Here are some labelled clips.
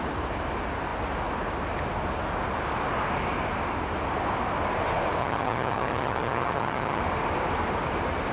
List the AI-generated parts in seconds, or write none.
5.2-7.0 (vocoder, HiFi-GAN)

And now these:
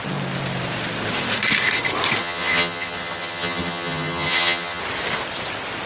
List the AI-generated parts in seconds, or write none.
2.2-4.8 (vocoder, HiFi-GAN)